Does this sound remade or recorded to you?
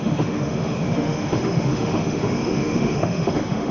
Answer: remade